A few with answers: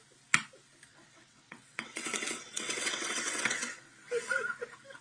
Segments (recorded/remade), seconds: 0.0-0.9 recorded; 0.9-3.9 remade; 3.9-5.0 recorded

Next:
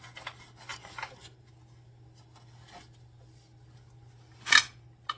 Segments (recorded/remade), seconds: 0.0-0.7 recorded; 0.7-1.5 remade; 1.5-5.2 recorded

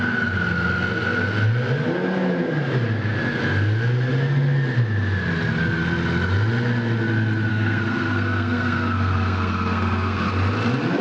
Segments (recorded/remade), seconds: 0.0-7.5 recorded; 7.5-10.3 remade; 10.3-11.0 recorded

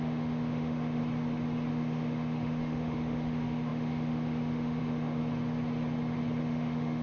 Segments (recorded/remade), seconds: 0.0-1.0 remade; 1.0-1.7 recorded; 1.7-5.2 remade; 5.2-6.4 recorded; 6.4-7.0 remade

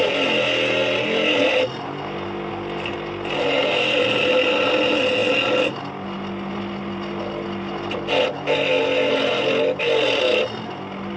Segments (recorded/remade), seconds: 0.0-11.2 recorded

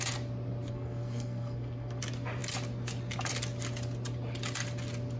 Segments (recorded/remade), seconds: 0.0-0.7 recorded; 0.7-2.0 remade; 2.0-5.2 recorded

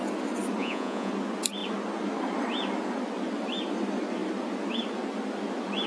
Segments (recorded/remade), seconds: 0.0-0.6 recorded; 0.6-1.1 remade; 1.1-5.9 recorded

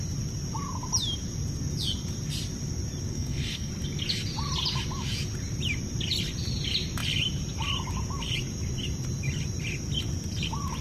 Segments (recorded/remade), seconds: 0.0-3.1 recorded; 3.1-3.7 remade; 3.7-10.8 recorded